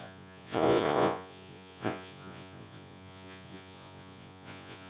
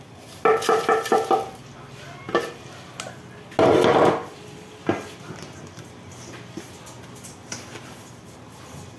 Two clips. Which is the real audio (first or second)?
second